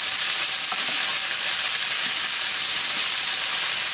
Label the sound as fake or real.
real